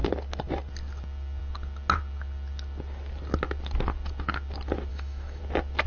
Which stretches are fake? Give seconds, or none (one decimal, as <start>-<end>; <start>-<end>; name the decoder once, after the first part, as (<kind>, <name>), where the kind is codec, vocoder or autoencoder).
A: 4.9-5.4 (autoencoder, DAC-VAE)